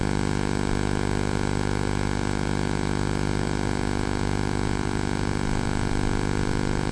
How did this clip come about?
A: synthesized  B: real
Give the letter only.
A